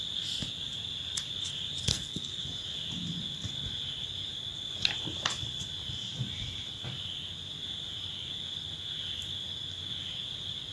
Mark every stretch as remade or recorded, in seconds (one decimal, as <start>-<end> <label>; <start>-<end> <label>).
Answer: 0.0-1.9 recorded; 1.9-2.4 remade; 2.4-10.7 recorded